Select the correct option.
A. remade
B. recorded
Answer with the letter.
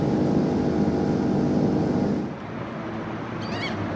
B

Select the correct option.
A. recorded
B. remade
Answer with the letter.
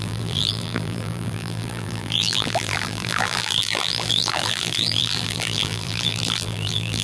B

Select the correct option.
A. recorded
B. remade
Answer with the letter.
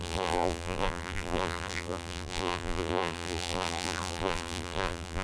B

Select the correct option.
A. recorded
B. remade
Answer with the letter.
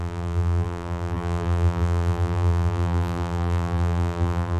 B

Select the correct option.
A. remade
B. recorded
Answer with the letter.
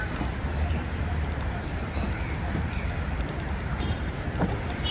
A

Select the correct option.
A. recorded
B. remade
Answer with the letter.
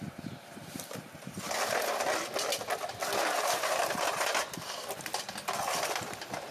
B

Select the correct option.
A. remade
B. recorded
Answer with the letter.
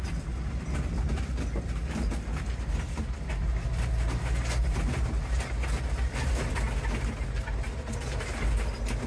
B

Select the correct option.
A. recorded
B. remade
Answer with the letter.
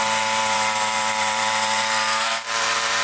B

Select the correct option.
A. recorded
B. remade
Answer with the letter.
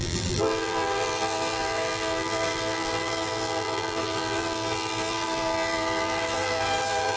B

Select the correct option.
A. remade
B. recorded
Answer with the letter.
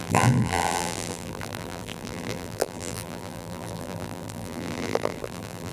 A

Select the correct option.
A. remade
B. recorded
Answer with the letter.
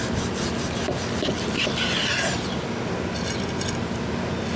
B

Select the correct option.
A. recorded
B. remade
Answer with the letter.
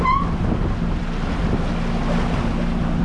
A